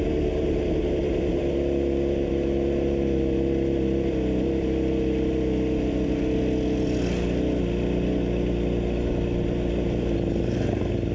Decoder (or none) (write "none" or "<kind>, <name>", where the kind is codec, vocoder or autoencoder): none